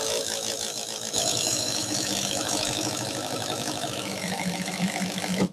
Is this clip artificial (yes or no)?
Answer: yes